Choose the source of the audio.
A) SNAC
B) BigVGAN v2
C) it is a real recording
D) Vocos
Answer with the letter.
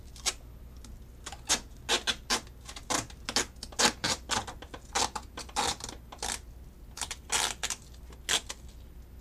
C